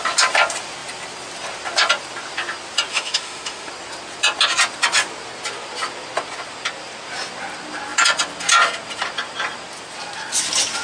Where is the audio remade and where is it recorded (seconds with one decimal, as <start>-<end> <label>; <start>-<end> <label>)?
0.0-2.9 recorded; 2.9-3.7 remade; 3.7-10.8 recorded